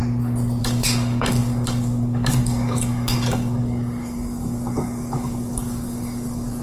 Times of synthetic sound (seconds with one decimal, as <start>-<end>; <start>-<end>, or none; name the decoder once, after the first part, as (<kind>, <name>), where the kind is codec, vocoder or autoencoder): 0.6-6.6 (codec, DAC)